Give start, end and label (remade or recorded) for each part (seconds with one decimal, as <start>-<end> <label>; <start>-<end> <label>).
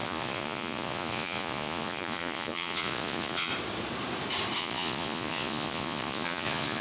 0.0-3.5 remade; 3.5-4.6 recorded; 4.6-6.8 remade